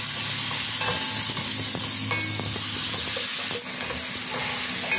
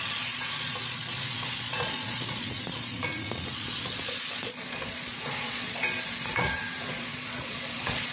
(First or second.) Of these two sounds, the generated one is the second